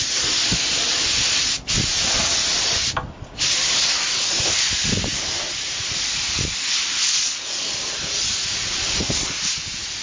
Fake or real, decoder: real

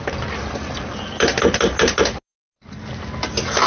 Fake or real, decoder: real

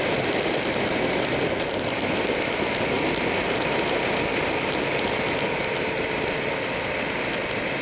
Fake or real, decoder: real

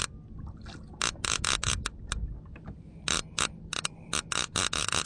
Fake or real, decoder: real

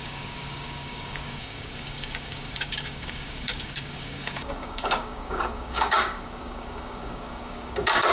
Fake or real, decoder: fake, codec, DAC